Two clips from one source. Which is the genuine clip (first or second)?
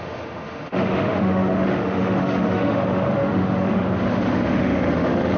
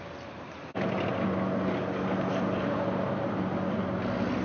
second